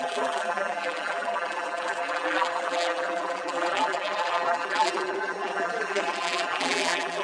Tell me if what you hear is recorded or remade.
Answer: remade